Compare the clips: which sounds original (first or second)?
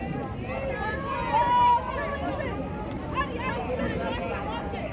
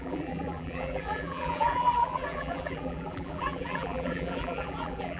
first